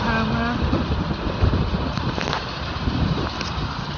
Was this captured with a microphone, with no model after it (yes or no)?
yes